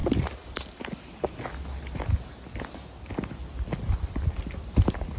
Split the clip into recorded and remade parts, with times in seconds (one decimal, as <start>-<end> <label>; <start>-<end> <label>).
0.0-5.2 recorded